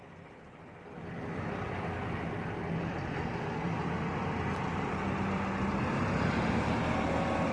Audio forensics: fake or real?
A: real